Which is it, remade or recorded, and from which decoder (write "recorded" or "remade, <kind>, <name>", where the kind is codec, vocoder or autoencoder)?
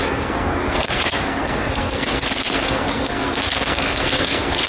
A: remade, codec, SNAC